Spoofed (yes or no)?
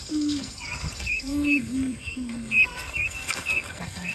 yes